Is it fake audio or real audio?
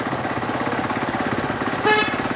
real